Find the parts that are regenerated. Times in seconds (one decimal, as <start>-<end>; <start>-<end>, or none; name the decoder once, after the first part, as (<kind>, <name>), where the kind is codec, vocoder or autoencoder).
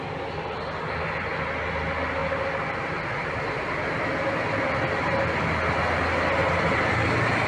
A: none